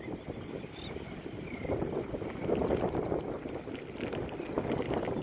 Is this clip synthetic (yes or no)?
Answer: no